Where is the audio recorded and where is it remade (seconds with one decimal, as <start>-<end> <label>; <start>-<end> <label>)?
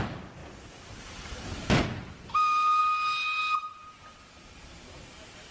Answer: 0.0-5.5 recorded